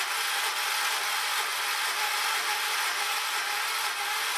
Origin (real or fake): real